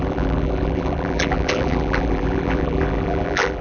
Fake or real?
fake